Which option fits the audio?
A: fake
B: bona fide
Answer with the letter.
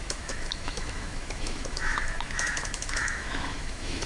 A